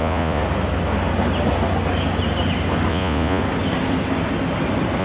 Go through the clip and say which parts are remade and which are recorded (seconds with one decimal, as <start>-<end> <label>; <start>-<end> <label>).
0.0-0.4 remade; 0.4-2.9 recorded; 2.9-3.4 remade; 3.4-5.0 recorded